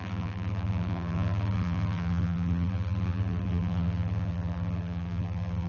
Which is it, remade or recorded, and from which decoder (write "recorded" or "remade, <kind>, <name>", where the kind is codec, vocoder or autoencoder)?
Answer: remade, vocoder, BigVGAN v2